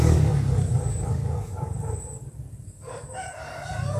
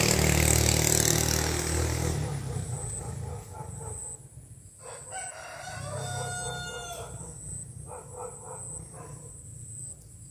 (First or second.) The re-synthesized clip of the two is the first